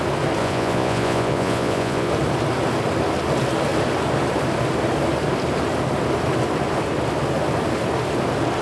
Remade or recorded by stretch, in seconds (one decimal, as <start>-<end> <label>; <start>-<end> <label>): 0.0-0.4 recorded; 0.4-2.1 remade; 2.1-8.6 recorded